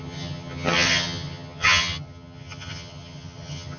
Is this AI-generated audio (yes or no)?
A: yes